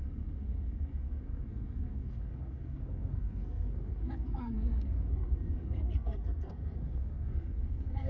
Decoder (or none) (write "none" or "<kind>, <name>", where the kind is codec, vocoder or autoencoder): codec, SNAC